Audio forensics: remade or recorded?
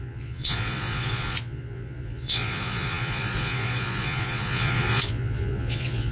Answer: remade